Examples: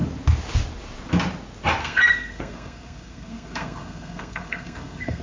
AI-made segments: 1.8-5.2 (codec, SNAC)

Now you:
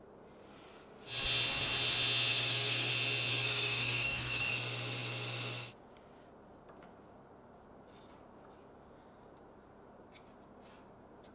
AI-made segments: 2.3-2.9 (codec, SNAC); 3.3-4.4

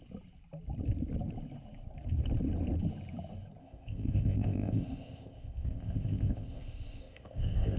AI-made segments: 3.6-7.8 (codec, ZipCodec)

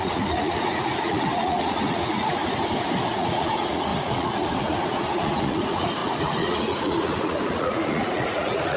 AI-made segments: 0.0-2.5 (vocoder, Vocos); 3.1-8.8